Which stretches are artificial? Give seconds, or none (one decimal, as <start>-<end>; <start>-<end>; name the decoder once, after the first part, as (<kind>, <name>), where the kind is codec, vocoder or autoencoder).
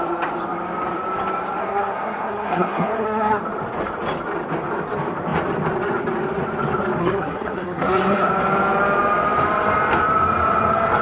1.6-3.4 (codec, SNAC); 7.0-8.3